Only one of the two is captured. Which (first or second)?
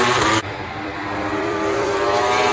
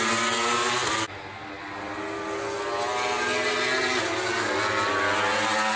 second